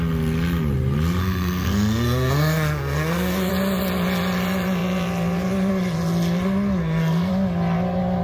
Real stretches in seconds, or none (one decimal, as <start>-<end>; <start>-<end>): 0.0-1.2; 3.5-6.8; 7.3-8.2